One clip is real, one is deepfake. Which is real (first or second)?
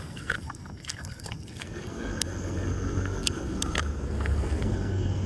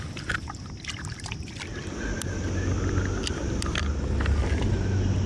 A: second